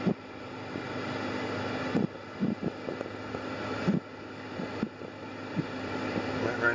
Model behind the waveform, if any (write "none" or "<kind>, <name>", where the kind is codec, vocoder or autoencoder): none